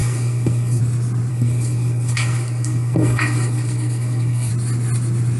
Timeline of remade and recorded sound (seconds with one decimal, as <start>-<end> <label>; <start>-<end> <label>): 0.0-0.8 remade; 0.8-1.3 recorded; 1.3-4.5 remade; 4.5-5.4 recorded